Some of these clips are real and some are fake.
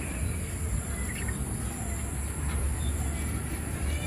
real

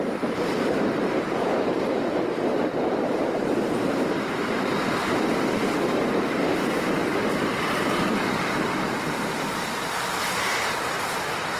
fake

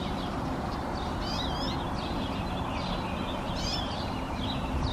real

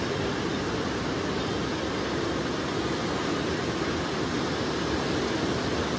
real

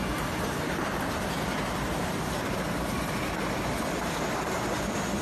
real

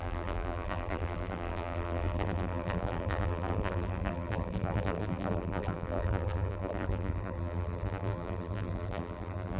fake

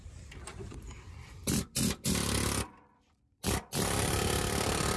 fake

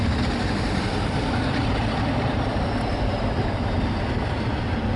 fake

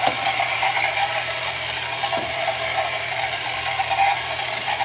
fake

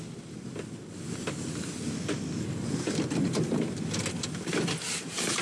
real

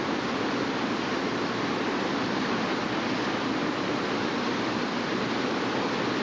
real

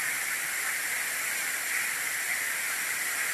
fake